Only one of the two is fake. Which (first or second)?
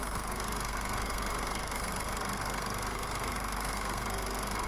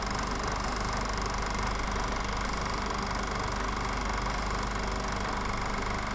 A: first